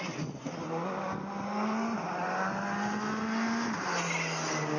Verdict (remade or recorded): recorded